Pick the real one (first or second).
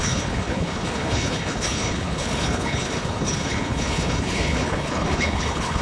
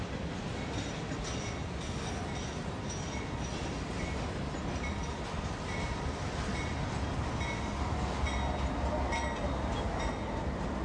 second